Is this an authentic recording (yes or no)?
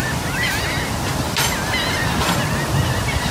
yes